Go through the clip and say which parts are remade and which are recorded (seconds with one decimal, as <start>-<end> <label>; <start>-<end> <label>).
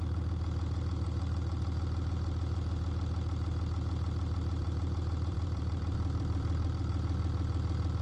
0.0-4.6 recorded; 4.6-6.8 remade; 6.8-8.0 recorded